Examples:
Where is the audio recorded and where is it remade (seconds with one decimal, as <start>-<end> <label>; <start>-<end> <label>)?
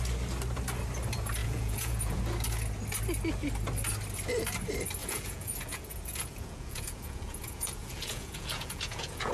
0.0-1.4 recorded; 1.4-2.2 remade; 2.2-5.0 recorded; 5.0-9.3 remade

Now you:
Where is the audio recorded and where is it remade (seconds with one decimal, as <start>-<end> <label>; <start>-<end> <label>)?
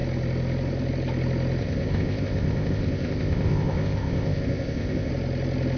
0.0-1.6 recorded; 1.6-5.1 remade; 5.1-5.8 recorded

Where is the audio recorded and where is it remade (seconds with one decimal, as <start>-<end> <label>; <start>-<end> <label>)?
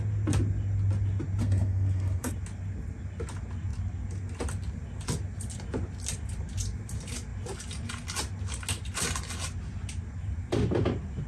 0.0-1.4 recorded; 1.4-2.3 remade; 2.3-11.3 recorded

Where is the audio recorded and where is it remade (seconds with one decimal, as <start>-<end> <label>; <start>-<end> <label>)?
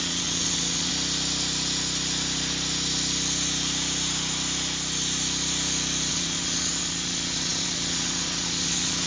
0.0-0.9 remade; 0.9-6.1 recorded; 6.1-9.1 remade